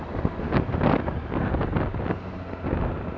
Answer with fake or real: real